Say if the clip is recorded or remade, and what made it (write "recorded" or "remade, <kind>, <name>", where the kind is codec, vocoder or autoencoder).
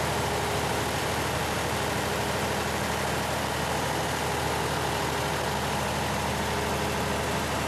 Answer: recorded